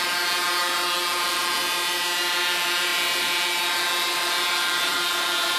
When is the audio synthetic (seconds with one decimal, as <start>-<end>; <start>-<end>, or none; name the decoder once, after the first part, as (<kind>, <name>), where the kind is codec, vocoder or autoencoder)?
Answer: 0.0-1.6 (vocoder, BigVGAN v2); 2.2-5.6